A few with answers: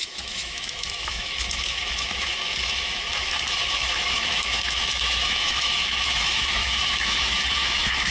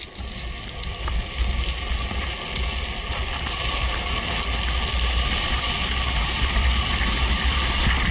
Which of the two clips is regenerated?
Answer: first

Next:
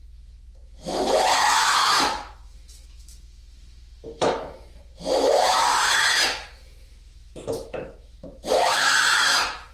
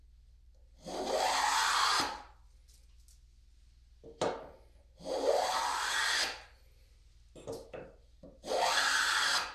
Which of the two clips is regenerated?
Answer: first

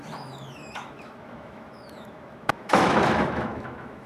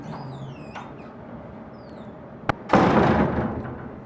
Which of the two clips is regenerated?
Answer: first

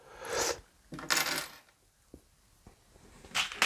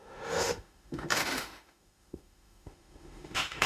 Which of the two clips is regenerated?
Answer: second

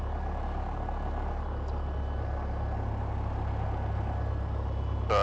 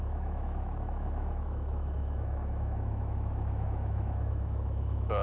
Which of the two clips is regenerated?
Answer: second